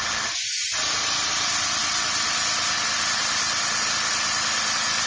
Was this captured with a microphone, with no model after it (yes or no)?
yes